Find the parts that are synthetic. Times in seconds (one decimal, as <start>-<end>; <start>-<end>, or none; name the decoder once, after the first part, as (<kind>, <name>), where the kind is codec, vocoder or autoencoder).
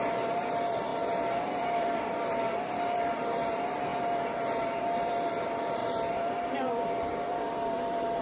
0.0-3.9 (vocoder, BigVGAN v2); 4.8-8.2